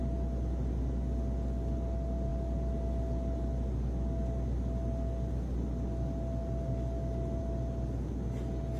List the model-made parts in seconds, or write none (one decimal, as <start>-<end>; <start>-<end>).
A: none